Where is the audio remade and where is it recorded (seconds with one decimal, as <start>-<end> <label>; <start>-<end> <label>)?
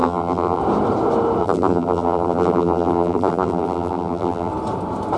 0.0-0.6 remade; 0.6-1.4 recorded; 1.4-4.5 remade; 4.5-5.2 recorded